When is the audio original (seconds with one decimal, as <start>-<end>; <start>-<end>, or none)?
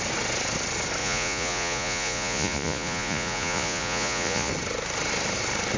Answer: 0.0-1.0; 4.5-5.8